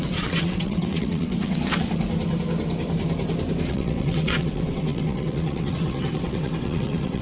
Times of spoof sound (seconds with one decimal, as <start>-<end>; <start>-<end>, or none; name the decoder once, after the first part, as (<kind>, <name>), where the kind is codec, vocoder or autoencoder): 0.0-1.6 (vocoder, WaveNeXt); 3.7-7.2